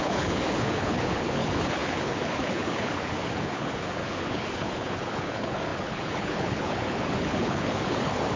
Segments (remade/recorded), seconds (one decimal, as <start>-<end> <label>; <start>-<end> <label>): 0.0-8.4 remade